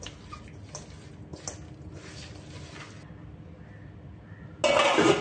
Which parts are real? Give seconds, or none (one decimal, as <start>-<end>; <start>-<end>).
0.0-5.2